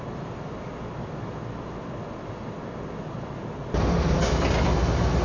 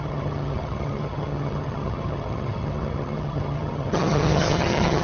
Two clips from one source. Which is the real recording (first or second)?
first